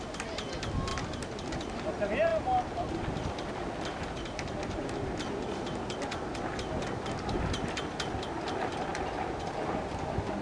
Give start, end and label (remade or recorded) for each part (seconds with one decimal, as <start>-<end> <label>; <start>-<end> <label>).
0.0-2.3 recorded; 2.3-2.9 remade; 2.9-10.4 recorded